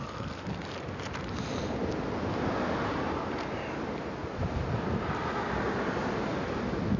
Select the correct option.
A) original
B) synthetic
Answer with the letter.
A